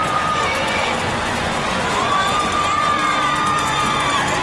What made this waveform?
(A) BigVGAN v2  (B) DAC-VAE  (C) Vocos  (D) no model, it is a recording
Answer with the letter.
C